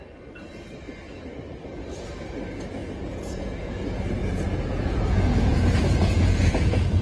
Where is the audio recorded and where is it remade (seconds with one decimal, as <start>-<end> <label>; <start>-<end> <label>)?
0.0-2.8 recorded; 2.8-3.7 remade; 3.7-4.2 recorded; 4.2-7.0 remade